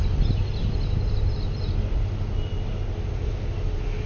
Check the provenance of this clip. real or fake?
real